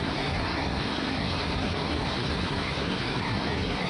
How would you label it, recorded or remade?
remade